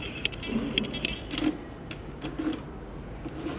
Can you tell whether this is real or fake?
real